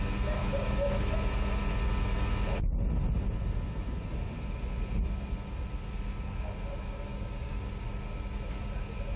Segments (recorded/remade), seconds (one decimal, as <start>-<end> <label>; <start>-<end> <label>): 0.0-0.4 recorded; 0.4-1.1 remade; 1.1-7.1 recorded; 7.1-7.9 remade; 7.9-9.2 recorded